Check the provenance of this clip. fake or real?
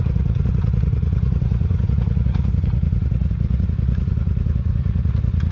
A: fake